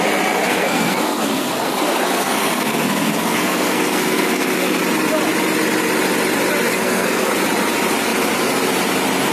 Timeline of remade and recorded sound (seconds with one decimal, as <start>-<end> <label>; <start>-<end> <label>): 0.0-0.4 recorded; 0.4-4.8 remade; 4.8-6.7 recorded; 6.7-7.3 remade; 7.3-9.3 recorded